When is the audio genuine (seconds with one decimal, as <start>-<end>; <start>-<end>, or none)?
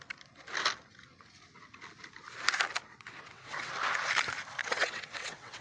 0.0-2.9; 3.7-4.6